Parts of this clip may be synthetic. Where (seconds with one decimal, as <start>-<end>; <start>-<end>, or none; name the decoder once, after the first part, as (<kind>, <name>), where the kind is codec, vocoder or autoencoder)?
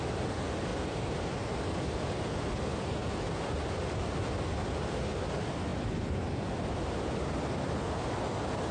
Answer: none